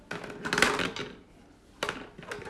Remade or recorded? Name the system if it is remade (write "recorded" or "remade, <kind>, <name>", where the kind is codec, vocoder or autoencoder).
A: recorded